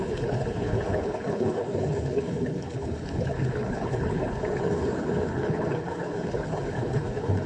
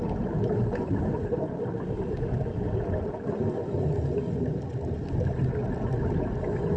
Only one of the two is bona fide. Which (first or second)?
second